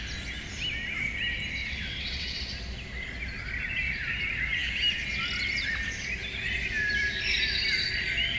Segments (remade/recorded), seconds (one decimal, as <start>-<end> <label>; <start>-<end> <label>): 0.0-1.6 recorded; 1.6-2.4 remade; 2.4-8.4 recorded